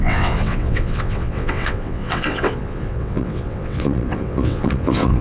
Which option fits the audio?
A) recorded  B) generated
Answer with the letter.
B